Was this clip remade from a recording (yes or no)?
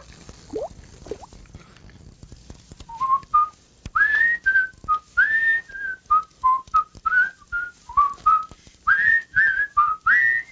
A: no